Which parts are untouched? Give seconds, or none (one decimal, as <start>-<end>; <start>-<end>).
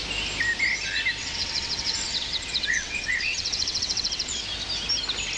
0.0-1.2; 4.4-5.4